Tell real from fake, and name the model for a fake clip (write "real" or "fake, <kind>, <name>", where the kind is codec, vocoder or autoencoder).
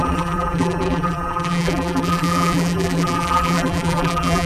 fake, vocoder, BigVGAN v2